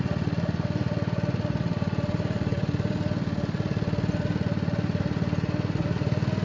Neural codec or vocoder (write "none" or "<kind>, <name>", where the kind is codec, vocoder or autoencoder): none